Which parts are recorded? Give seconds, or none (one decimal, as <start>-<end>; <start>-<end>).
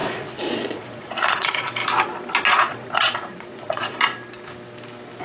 1.8-2.5; 4.1-5.2